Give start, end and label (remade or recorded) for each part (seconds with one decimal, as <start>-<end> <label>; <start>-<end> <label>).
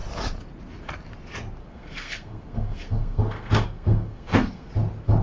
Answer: 0.0-1.6 recorded; 1.6-4.7 remade; 4.7-5.2 recorded